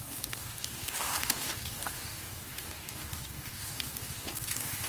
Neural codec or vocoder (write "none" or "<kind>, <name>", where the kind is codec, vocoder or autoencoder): codec, DAC